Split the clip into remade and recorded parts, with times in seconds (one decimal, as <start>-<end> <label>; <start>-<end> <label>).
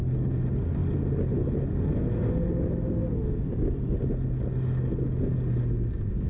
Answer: 0.0-3.0 recorded; 3.0-3.9 remade; 3.9-6.3 recorded